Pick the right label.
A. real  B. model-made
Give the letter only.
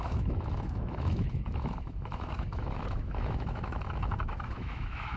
B